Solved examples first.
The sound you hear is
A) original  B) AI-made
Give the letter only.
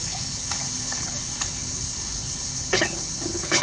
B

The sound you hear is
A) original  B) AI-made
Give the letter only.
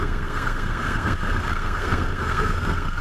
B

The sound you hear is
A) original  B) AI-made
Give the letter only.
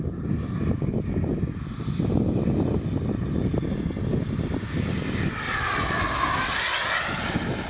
A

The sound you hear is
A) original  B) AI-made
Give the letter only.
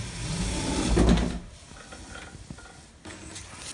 A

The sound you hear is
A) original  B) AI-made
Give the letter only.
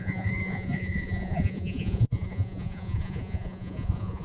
B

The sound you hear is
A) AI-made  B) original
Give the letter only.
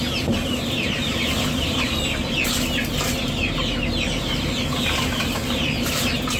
B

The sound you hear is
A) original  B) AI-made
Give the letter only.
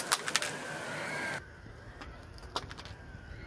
A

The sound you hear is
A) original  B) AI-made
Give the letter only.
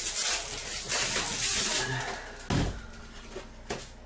A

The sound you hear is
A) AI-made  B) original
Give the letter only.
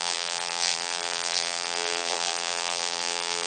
A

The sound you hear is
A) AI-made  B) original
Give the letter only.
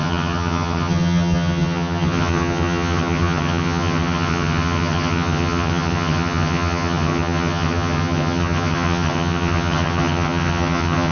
A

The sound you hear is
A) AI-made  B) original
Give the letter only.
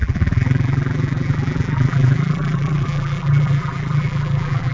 A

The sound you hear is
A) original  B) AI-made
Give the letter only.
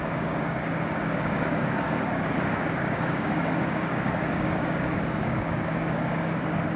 B